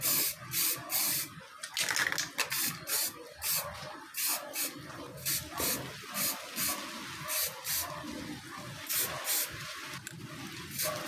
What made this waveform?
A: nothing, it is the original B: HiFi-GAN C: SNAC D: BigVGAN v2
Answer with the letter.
A